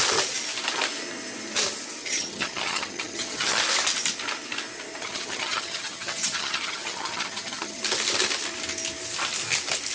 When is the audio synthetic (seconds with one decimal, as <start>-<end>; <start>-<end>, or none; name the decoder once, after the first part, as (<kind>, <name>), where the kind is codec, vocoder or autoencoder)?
2.0-3.6 (vocoder, HiFi-GAN); 5.0-7.8